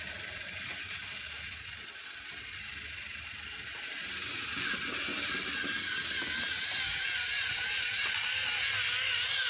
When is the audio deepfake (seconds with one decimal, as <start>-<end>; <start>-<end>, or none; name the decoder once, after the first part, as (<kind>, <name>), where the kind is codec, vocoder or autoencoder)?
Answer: none

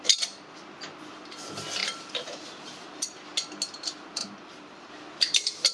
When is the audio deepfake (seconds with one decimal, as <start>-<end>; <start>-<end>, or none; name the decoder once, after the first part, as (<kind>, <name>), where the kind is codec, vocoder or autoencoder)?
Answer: 1.8-2.5 (vocoder, BigVGAN v2); 4.2-4.9

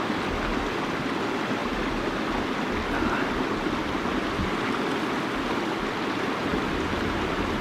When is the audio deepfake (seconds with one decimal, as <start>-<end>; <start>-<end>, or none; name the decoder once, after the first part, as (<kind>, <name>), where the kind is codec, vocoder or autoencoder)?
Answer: none

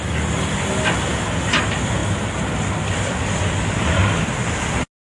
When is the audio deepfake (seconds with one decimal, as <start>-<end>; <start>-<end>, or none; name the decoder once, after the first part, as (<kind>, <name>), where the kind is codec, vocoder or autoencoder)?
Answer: 4.0-4.6 (vocoder, BigVGAN v2)

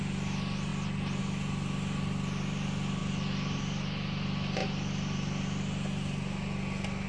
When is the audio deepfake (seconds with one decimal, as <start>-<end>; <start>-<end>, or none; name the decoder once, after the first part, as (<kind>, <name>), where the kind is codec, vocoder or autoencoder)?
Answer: none

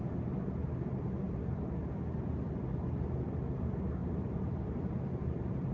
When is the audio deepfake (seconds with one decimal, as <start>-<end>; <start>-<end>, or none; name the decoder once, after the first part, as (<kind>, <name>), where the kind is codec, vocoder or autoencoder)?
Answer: 4.0-5.7 (vocoder, BigVGAN v2)

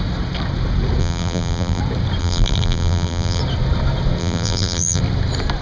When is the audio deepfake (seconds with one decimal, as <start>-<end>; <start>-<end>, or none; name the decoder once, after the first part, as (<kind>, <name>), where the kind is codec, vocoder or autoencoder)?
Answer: 1.0-1.8 (vocoder, BigVGAN v2); 2.2-3.4; 4.2-5.0